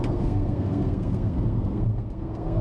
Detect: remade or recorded remade